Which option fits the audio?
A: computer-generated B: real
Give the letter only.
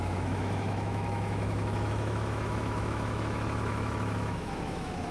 A